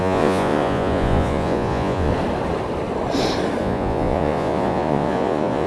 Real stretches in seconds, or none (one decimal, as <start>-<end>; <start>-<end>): 2.1-3.6